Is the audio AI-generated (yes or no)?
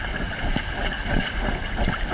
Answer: no